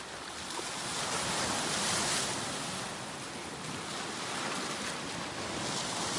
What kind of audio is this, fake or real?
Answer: real